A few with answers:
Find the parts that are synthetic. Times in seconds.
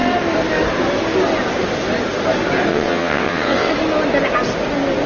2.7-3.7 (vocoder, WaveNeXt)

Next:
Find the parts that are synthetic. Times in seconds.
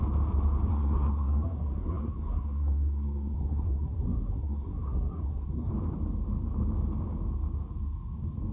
0.7-5.7 (codec, SNAC)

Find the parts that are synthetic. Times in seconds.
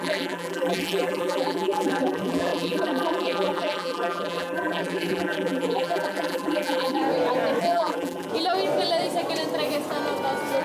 0.0-7.0 (vocoder, BigVGAN v2); 7.6-8.3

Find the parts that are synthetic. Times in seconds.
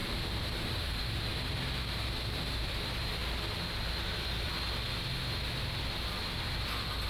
0.0-0.6 (vocoder, BigVGAN v2); 1.3-2.7